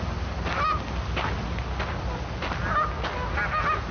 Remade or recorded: recorded